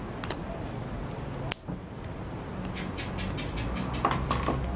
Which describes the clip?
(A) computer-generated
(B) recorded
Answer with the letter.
B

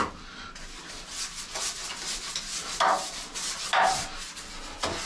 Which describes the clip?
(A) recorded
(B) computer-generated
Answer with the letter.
A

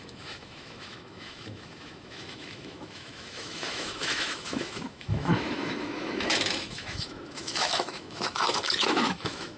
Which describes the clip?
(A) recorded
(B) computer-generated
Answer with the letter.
B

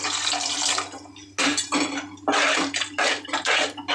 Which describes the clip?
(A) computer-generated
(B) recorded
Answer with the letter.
B